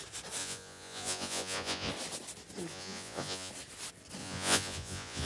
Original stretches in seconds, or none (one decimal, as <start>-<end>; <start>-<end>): 0.0-0.4; 1.9-2.7; 3.5-4.2